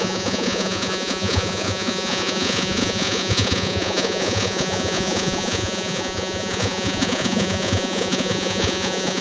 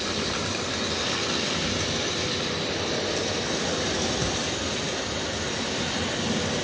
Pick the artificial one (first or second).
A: first